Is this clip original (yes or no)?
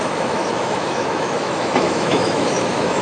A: no